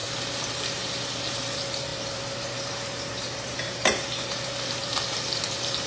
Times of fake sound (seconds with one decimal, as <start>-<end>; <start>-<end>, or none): 0.5-5.9